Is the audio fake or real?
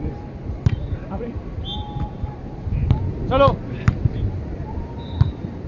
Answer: real